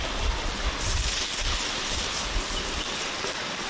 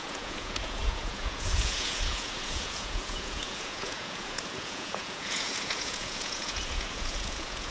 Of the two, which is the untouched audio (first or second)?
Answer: first